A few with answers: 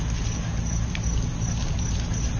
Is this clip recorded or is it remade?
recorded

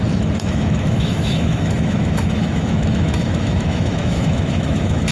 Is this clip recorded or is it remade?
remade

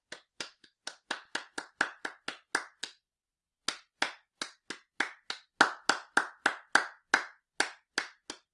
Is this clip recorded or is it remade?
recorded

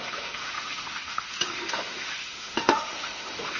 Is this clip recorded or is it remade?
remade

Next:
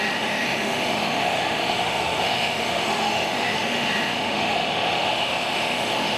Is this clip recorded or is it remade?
remade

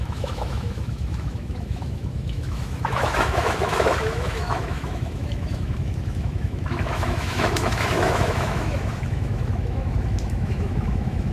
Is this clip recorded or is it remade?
remade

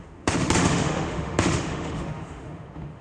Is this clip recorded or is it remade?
remade